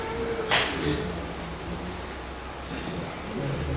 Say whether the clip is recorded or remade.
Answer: recorded